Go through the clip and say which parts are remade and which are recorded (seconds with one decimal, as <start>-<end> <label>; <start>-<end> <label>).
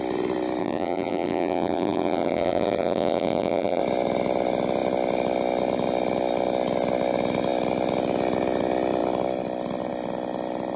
0.0-0.6 recorded; 0.6-3.8 remade; 3.8-10.8 recorded